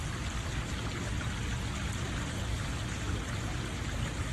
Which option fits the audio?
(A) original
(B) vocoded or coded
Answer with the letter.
A